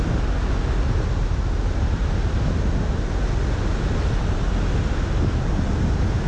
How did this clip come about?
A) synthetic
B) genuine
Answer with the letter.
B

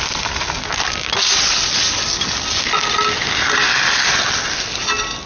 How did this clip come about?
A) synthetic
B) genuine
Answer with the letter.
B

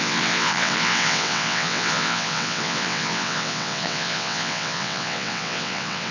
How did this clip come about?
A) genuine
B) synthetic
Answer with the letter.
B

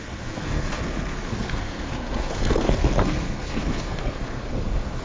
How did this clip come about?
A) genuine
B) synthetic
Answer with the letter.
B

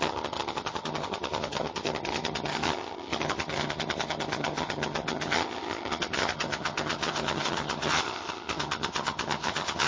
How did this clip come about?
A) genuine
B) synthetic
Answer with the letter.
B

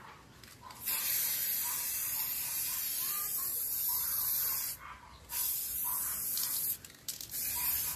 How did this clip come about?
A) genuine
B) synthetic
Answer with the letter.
A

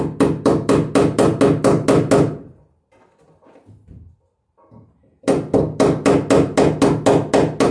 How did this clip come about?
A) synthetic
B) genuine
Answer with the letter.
B